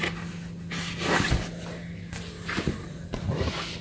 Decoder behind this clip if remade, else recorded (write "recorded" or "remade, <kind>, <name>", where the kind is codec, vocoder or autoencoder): recorded